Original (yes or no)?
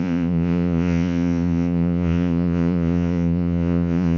no